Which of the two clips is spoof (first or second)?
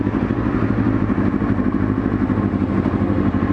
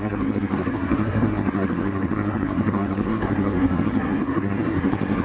second